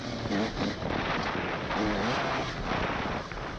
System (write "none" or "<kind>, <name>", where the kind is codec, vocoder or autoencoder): none